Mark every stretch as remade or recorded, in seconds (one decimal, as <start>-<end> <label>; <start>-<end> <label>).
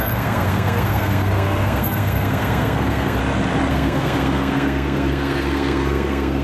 0.0-3.2 remade; 3.2-3.7 recorded; 3.7-6.4 remade